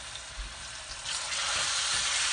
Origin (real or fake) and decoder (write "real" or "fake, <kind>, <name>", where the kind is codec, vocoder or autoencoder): real